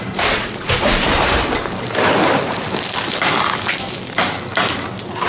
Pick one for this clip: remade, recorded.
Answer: recorded